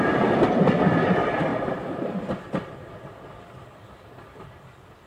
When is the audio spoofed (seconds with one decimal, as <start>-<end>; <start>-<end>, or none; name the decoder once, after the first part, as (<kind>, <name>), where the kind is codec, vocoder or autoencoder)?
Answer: none